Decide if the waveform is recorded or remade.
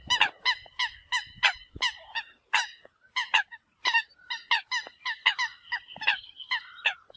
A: recorded